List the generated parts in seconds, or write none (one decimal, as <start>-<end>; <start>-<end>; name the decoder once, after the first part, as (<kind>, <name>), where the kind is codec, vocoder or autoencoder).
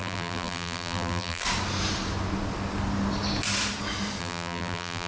0.0-1.4 (vocoder, BigVGAN v2); 4.2-5.1